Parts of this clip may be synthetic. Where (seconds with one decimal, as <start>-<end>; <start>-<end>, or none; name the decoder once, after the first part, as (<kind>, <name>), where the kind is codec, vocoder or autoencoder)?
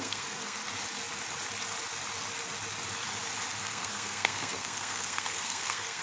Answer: 0.0-0.6 (codec, SNAC); 3.6-6.0